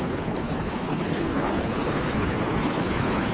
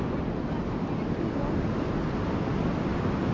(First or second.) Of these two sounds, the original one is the second